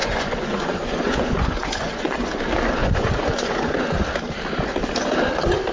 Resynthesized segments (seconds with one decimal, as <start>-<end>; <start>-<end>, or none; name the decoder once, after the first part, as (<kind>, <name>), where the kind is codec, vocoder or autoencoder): 0.0-2.4 (vocoder, Vocos); 2.8-3.8